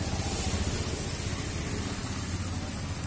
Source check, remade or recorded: recorded